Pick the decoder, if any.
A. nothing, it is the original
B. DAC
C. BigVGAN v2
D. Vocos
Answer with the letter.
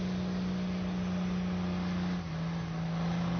A